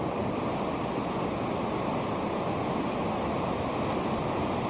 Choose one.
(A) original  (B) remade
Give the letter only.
A